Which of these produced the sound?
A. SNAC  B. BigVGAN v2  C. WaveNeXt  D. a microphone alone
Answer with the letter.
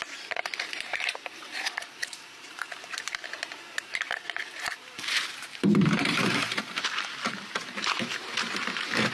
B